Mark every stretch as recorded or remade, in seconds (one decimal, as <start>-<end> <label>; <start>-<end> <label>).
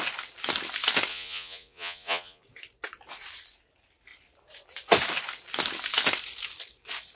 0.0-1.1 recorded; 1.1-2.4 remade; 2.4-7.2 recorded